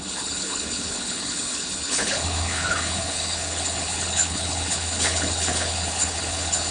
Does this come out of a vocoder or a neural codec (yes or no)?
yes